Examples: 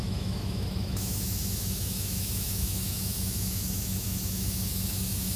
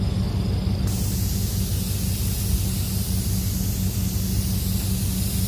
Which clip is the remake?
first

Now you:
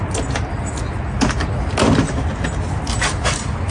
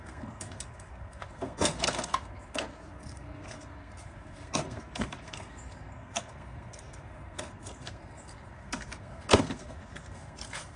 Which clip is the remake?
second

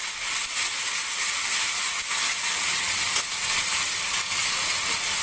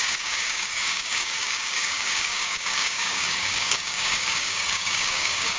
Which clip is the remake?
second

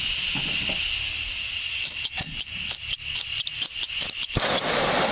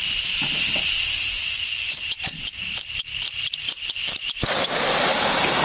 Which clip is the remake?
second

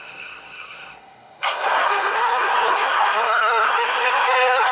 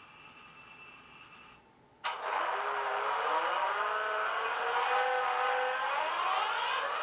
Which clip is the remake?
first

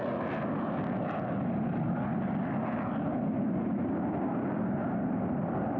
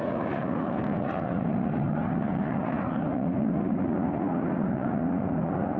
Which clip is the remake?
second